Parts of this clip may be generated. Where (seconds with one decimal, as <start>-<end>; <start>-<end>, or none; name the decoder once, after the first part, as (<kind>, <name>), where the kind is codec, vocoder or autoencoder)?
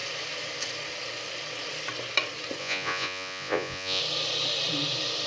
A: 2.6-4.0 (vocoder, Vocos)